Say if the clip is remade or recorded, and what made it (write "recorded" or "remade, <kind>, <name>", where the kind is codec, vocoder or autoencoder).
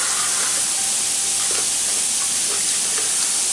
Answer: recorded